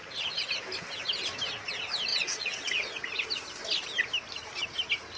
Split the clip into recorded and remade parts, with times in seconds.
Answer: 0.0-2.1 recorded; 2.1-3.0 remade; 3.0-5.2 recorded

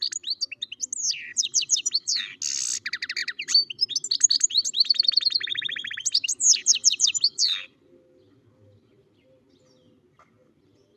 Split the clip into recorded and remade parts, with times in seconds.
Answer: 0.0-1.3 recorded; 1.3-2.4 remade; 2.4-3.2 recorded; 3.2-3.9 remade; 3.9-5.5 recorded; 5.5-9.5 remade; 9.5-11.0 recorded

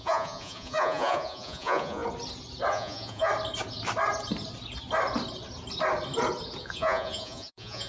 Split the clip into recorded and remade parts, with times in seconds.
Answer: 0.0-2.0 remade; 2.0-2.7 recorded; 2.7-3.3 remade; 3.3-6.6 recorded; 6.6-7.9 remade

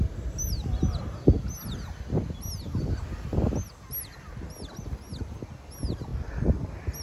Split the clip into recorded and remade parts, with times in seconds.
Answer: 0.0-7.0 recorded

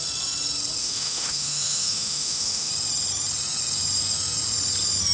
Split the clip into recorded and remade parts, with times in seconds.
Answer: 0.0-0.8 recorded; 0.8-2.7 remade; 2.7-5.1 recorded

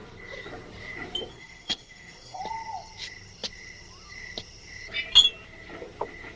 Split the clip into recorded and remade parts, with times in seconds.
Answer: 0.0-1.3 recorded; 1.3-2.4 remade; 2.4-6.4 recorded

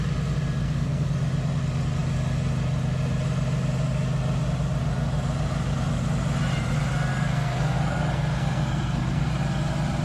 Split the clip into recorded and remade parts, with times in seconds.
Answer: 0.0-0.6 recorded; 0.6-1.1 remade; 1.1-7.1 recorded; 7.1-9.3 remade; 9.3-10.0 recorded